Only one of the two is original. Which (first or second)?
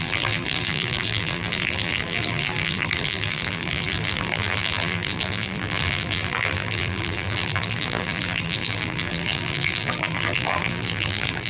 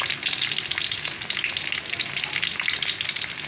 second